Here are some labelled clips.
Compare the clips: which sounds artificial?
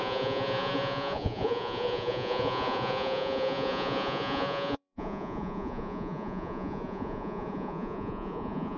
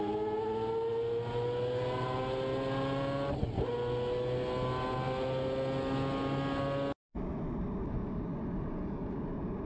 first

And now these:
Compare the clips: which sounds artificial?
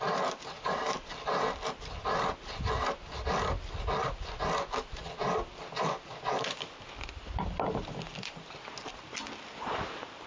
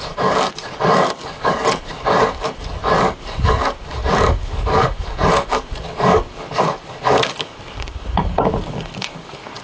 second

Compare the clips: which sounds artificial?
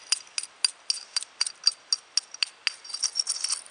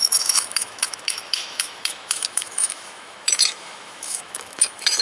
second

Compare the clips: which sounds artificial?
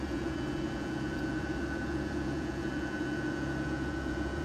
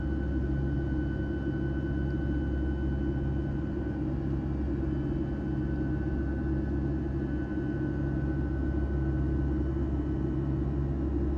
first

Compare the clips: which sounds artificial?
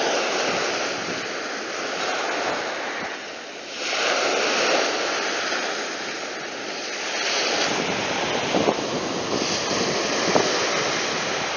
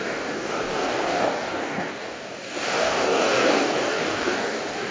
second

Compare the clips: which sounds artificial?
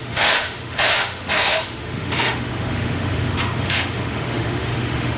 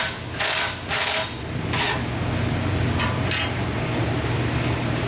first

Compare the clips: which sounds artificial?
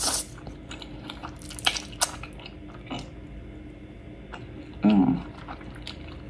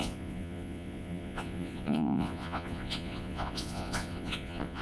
second